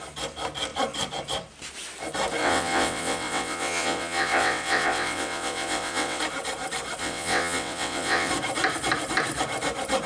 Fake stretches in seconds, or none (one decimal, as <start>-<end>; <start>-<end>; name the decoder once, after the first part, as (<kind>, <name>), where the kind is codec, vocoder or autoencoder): 2.4-6.2 (vocoder, WaveNeXt); 7.0-8.3

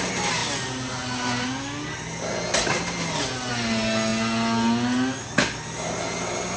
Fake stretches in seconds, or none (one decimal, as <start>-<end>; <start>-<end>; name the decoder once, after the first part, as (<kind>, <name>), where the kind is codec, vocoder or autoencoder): none

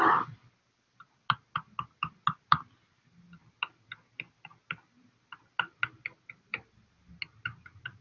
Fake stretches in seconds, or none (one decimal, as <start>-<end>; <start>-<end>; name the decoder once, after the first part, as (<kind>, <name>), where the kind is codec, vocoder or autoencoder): 6.5-7.1 (vocoder, BigVGAN v2)

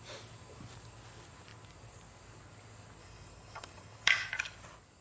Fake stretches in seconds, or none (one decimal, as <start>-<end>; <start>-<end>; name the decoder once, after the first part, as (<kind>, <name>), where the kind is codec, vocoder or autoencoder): 3.0-4.3 (codec, DAC)

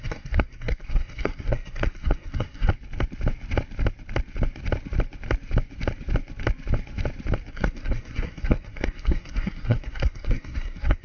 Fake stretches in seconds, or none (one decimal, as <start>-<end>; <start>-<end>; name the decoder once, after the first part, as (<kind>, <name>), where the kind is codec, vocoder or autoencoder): 0.0-2.7 (codec, SNAC); 7.5-11.0